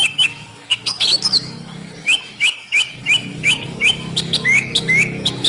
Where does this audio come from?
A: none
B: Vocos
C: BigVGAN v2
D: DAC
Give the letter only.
D